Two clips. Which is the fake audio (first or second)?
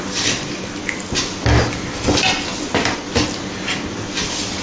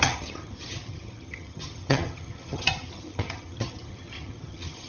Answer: second